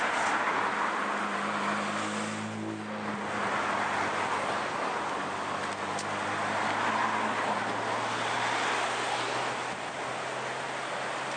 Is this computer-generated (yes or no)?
no